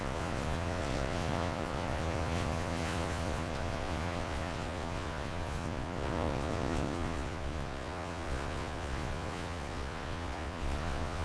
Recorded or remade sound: remade